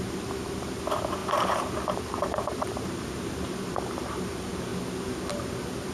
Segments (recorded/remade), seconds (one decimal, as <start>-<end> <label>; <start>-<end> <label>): 0.0-4.7 remade; 4.7-5.4 recorded; 5.4-5.9 remade